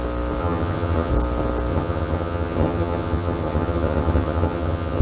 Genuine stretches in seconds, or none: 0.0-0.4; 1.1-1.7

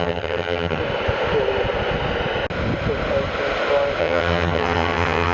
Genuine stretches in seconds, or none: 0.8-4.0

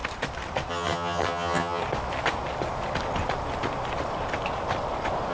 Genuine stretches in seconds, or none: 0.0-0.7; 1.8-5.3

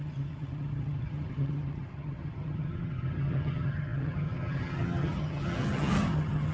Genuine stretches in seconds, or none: none

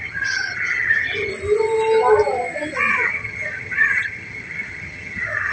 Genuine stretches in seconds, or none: 1.3-2.9

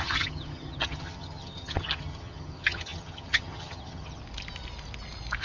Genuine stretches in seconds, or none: 4.2-5.4